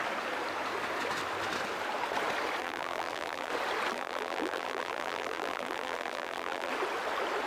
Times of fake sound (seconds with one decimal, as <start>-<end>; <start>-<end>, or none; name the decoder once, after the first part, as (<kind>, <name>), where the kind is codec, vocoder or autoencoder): 2.6-3.5 (vocoder, BigVGAN v2); 3.9-6.7

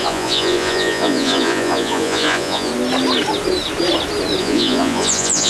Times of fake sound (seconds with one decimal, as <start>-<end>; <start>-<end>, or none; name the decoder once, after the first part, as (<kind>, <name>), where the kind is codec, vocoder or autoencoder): 0.0-2.7 (vocoder, Vocos); 4.4-5.5

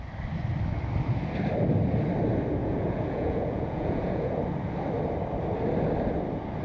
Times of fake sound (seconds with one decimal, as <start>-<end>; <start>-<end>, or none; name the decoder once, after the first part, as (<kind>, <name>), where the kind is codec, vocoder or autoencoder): 2.6-4.4 (vocoder, Vocos)

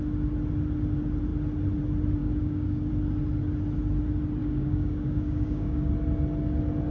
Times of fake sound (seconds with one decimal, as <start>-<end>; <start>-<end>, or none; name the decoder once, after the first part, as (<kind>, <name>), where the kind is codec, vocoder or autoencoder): 2.2-2.9 (codec, DAC); 4.4-5.9

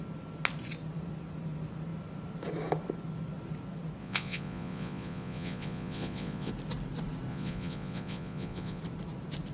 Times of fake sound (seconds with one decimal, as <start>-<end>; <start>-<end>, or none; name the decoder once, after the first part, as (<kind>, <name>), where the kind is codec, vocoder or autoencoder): 4.0-6.5 (vocoder, Vocos); 7.3-8.8

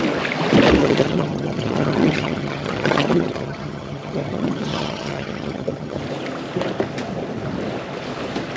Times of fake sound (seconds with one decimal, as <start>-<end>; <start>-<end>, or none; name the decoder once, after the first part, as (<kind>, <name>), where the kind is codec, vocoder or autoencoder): 0.8-6.0 (vocoder, HiFi-GAN)

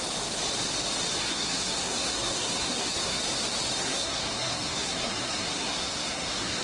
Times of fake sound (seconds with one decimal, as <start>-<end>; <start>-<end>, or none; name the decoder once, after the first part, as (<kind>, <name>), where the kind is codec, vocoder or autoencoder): 1.3-3.2 (codec, SNAC); 3.8-6.6